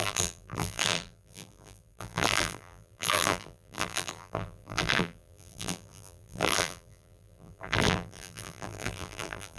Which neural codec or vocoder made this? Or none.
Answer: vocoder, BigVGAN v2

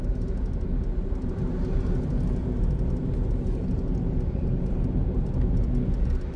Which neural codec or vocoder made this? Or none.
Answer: none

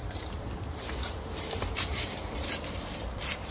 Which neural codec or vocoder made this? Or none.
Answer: vocoder, BigVGAN v2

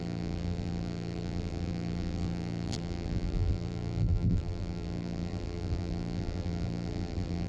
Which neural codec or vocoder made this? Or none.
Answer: vocoder, BigVGAN v2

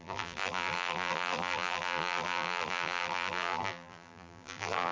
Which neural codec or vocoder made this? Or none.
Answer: vocoder, BigVGAN v2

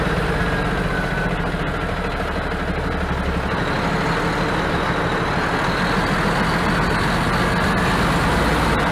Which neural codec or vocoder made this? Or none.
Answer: none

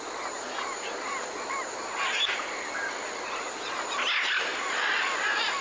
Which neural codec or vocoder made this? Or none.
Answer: none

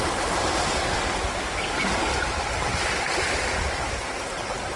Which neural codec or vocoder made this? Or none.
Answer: none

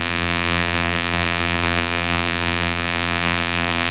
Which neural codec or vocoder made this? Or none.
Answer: vocoder, BigVGAN v2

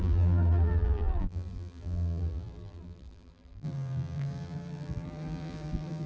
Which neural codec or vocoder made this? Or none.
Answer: vocoder, BigVGAN v2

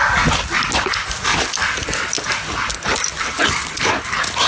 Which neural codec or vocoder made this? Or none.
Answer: none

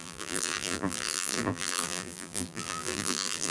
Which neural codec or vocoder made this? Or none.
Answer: vocoder, BigVGAN v2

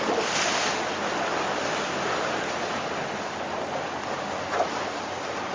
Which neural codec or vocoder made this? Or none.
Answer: none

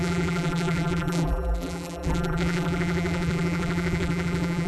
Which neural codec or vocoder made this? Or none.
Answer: vocoder, BigVGAN v2